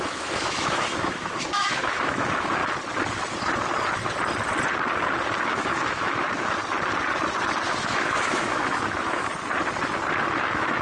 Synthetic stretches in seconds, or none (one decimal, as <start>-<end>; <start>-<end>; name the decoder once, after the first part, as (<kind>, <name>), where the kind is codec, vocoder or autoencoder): 0.0-2.6 (autoencoder, DAC-VAE); 5.4-6.6; 7.8-9.3; 10.2-10.8